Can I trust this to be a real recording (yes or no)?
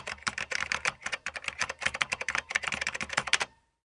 no